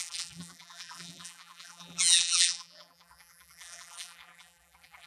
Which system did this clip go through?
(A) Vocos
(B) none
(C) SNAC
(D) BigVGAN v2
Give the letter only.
D